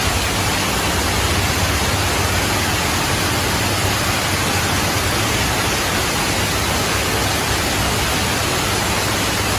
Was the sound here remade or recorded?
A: recorded